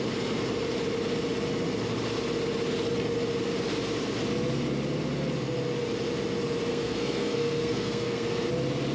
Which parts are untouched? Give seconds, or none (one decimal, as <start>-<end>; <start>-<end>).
0.0-6.7; 8.5-8.9